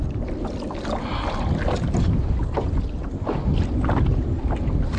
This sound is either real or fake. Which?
real